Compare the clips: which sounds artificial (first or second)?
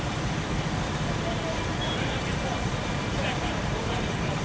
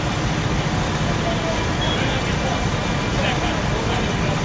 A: first